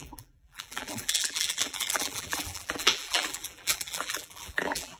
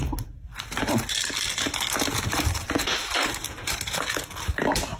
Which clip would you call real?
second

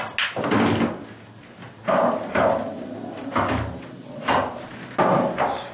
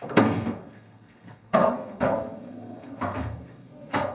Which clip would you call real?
first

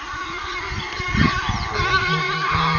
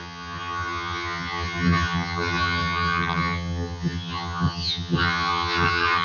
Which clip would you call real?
first